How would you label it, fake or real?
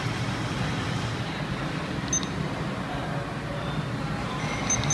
real